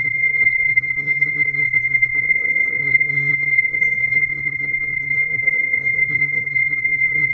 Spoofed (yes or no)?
yes